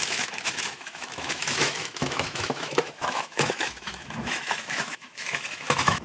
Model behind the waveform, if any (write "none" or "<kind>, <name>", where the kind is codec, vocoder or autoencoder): autoencoder, DAC-VAE